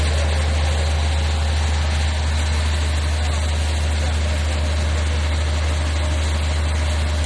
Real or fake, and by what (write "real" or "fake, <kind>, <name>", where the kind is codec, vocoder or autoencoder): real